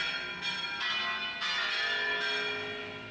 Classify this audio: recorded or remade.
recorded